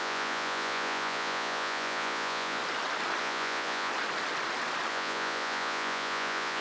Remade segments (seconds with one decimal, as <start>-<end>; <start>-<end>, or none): 0.0-2.6; 3.2-3.9; 4.9-6.6